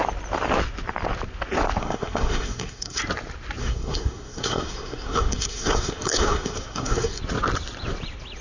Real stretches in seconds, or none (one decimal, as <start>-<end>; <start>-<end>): 0.0-1.8; 3.0-3.6; 7.2-8.4